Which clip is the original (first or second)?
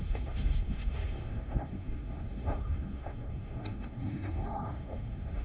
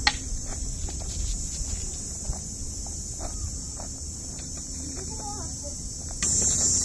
second